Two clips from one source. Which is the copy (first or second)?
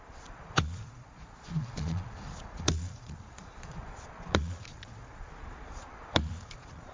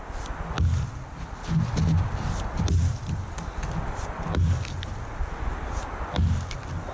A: first